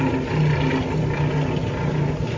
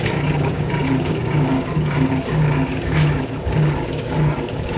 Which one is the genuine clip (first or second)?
first